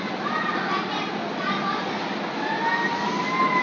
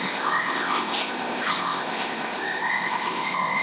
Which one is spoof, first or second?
second